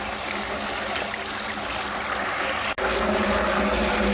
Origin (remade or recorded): recorded